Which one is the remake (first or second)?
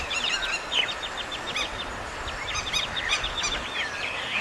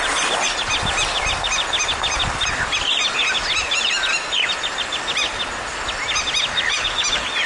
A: first